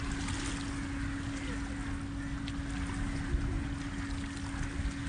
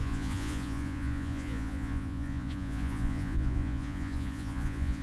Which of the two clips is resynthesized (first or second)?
second